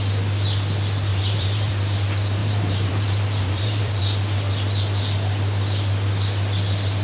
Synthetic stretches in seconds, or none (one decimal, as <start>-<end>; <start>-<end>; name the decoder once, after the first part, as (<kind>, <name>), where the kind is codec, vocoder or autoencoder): 1.1-1.7 (vocoder, BigVGAN v2); 2.4-4.0